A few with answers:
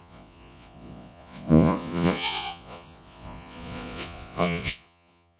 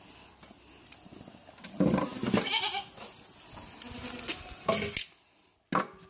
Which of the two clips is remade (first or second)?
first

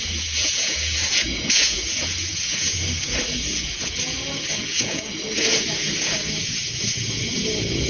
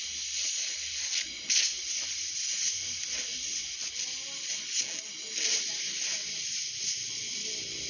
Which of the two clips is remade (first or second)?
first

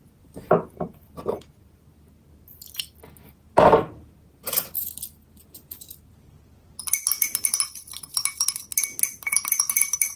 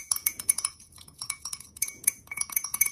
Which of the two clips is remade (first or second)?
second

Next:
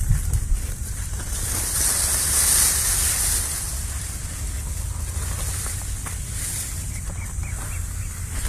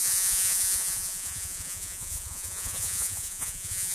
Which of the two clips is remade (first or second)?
second